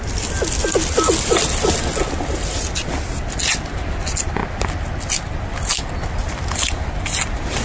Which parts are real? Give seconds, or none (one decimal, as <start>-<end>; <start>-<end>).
0.0-7.6